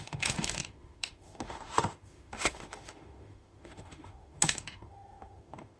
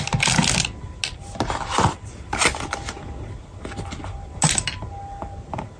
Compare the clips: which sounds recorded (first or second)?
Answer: second